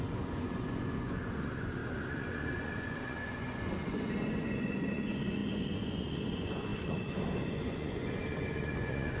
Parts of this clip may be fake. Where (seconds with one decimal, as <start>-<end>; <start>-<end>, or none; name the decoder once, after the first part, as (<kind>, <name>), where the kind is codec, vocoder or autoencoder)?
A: 0.0-9.2 (vocoder, Vocos)